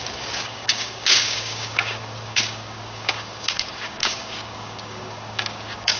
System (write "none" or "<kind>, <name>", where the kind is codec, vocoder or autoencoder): codec, DAC